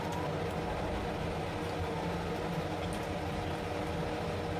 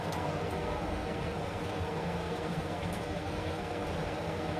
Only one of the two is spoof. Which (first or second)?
second